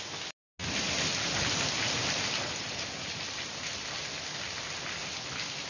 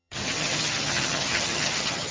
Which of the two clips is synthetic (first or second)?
second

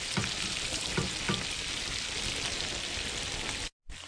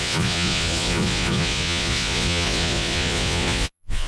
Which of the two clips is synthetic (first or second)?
second